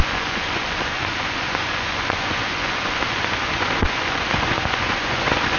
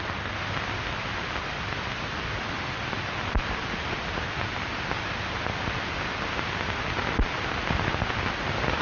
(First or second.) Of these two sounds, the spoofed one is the first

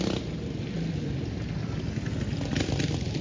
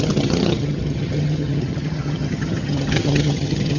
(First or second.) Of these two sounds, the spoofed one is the second